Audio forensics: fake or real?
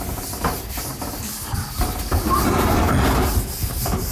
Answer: real